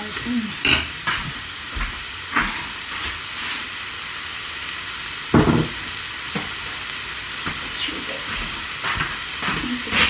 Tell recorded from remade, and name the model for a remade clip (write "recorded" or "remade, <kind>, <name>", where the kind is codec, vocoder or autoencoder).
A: recorded